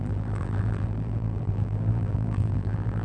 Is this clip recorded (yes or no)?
no